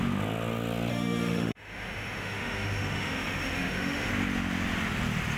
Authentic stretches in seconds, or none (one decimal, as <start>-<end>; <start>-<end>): 0.0-0.9; 4.1-5.4